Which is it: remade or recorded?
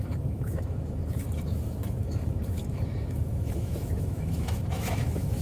remade